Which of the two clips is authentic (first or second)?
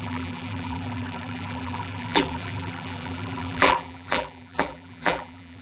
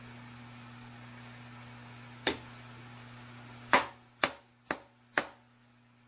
second